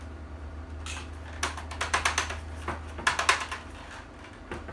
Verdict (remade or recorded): recorded